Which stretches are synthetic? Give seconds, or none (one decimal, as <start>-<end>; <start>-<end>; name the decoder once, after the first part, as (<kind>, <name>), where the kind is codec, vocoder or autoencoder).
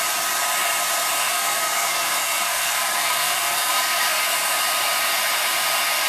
1.2-4.2 (codec, SNAC)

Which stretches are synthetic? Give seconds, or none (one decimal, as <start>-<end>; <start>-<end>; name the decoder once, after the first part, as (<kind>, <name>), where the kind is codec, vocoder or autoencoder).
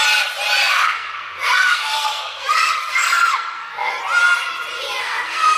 0.6-4.0 (codec, SNAC); 5.0-5.6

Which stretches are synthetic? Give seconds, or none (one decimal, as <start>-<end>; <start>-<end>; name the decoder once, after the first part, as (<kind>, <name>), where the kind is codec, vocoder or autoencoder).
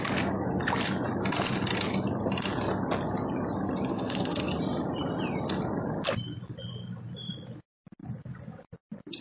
3.9-4.5 (codec, SNAC)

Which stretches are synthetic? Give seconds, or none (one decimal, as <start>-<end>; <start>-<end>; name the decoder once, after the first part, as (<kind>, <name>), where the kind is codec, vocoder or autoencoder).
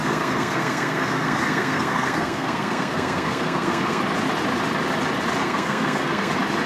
0.0-4.0 (codec, SNAC); 5.4-6.3